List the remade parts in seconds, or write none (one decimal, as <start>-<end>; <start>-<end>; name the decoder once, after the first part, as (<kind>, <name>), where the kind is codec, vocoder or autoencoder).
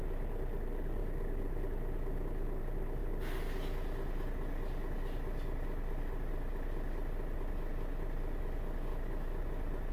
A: 8.9-9.4 (autoencoder, DAC-VAE)